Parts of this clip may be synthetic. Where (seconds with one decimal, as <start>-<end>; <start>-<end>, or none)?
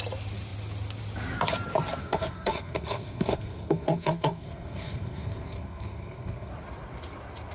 2.0-6.5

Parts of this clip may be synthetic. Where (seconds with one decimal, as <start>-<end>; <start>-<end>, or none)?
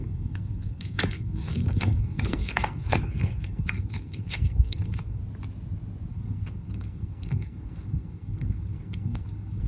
0.0-5.2; 6.1-9.7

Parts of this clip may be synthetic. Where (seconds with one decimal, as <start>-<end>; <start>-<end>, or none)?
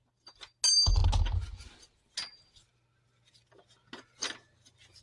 none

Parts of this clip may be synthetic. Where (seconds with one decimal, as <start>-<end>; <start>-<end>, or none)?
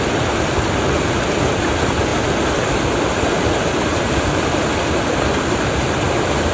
none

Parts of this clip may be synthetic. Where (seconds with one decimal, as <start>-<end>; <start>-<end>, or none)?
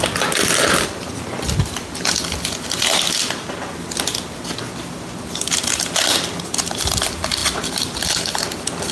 none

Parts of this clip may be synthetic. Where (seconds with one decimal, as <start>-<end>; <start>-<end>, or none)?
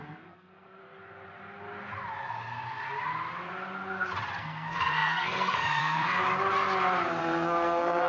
0.0-0.8; 4.4-6.2; 7.2-8.1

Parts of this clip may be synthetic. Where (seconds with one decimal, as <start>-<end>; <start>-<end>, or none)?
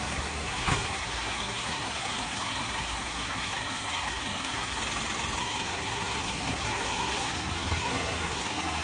0.0-4.8; 5.4-8.8